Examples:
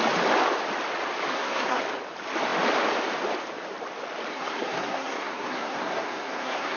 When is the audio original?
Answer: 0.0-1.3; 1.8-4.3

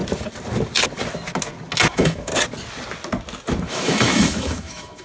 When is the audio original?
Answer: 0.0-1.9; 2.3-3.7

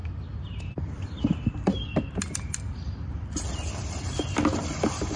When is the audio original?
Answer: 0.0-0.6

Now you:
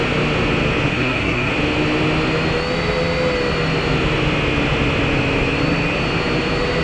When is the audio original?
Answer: 0.0-0.9; 1.5-6.8

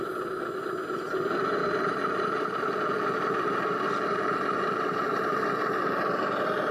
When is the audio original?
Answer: 0.0-1.6; 5.6-6.7